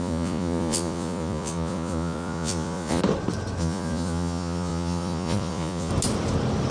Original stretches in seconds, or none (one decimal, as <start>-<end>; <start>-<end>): 3.0-3.6; 5.9-6.7